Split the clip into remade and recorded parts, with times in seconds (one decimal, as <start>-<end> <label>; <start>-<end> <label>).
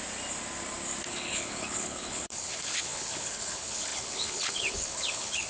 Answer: 0.0-1.1 recorded; 1.1-5.5 remade